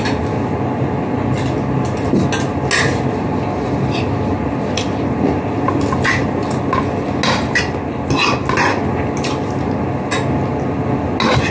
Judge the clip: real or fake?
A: real